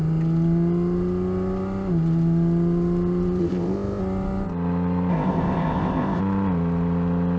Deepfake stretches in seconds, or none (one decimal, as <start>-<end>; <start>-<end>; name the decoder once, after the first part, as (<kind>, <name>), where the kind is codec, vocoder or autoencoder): 3.4-4.0 (codec, ZipCodec); 5.1-6.2